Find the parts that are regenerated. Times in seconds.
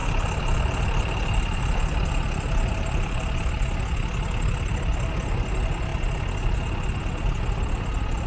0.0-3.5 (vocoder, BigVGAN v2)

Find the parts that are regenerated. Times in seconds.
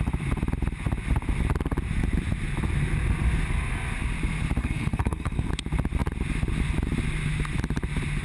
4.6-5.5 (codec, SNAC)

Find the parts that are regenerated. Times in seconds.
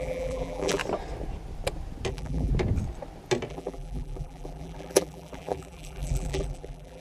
0.0-0.8 (vocoder, BigVGAN v2); 2.1-2.5; 3.5-7.0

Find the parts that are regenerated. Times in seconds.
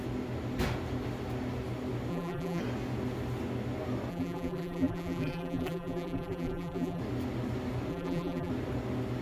2.1-2.6 (vocoder, BigVGAN v2); 4.1-7.0; 7.9-8.5